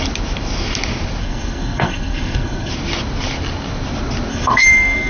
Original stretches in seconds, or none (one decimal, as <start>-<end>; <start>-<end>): 0.0-1.2; 2.7-4.3